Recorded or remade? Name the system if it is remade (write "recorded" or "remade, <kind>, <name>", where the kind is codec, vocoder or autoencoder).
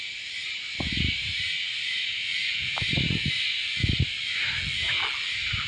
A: recorded